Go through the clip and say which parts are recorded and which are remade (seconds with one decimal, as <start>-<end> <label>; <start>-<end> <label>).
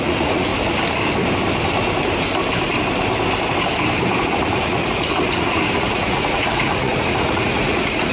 0.0-0.5 remade; 0.5-4.3 recorded; 4.3-8.1 remade